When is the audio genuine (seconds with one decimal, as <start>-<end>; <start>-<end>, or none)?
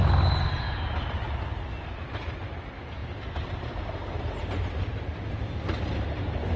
0.0-6.6